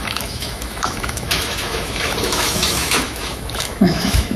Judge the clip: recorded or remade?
remade